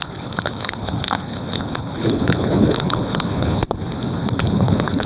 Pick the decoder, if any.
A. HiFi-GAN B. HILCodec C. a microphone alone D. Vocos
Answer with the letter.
B